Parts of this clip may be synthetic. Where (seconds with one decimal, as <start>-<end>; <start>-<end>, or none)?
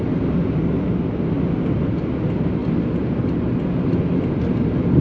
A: none